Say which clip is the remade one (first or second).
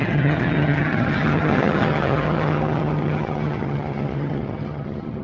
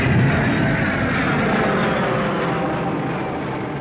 first